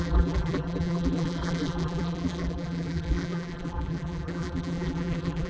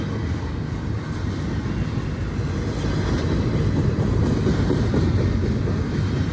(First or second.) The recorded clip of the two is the second